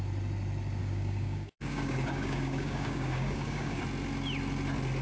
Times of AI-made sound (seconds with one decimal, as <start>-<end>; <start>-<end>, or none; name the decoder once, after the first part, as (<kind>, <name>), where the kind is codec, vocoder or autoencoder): 0.8-3.8 (codec, DAC)